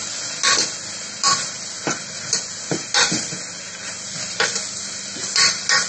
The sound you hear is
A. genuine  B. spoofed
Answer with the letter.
A